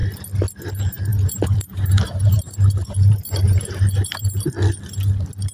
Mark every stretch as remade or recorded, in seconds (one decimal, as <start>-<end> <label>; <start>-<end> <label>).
0.0-1.1 recorded; 1.1-4.4 remade; 4.4-5.5 recorded

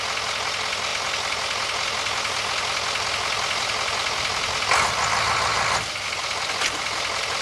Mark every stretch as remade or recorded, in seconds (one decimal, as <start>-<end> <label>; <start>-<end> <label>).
0.0-7.4 recorded

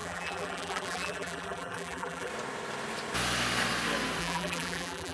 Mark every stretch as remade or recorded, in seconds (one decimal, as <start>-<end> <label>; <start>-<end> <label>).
0.0-2.3 remade; 2.3-4.2 recorded; 4.2-5.1 remade

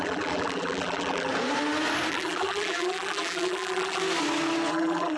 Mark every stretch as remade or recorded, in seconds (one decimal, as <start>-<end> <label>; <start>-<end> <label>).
0.0-1.3 remade; 1.3-2.1 recorded; 2.1-4.0 remade; 4.0-4.7 recorded; 4.7-5.2 remade

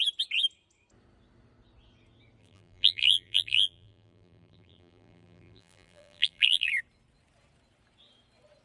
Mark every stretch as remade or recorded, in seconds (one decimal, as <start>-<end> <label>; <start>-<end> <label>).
0.0-2.4 recorded; 2.4-6.7 remade; 6.7-8.6 recorded

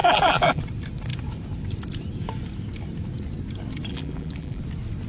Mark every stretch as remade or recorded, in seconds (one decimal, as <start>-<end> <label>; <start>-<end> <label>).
0.0-0.6 remade; 0.6-3.9 recorded; 3.9-4.6 remade; 4.6-5.1 recorded

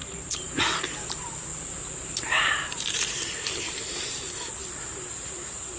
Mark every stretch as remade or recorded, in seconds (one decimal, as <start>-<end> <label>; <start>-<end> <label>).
0.0-5.8 remade